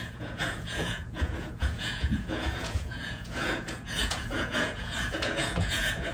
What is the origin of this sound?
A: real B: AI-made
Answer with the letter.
B